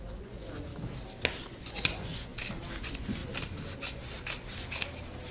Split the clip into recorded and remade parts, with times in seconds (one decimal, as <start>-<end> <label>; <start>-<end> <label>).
0.0-0.7 remade; 0.7-1.4 recorded; 1.4-2.3 remade; 2.3-2.8 recorded; 2.8-3.2 remade; 3.2-5.3 recorded

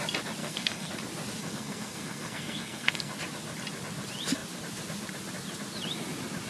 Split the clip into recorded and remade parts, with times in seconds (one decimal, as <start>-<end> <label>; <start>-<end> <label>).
0.0-0.4 recorded; 0.4-0.9 remade; 0.9-1.4 recorded; 1.4-3.1 remade; 3.1-6.5 recorded